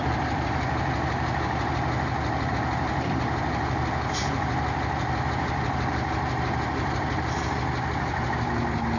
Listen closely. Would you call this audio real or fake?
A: real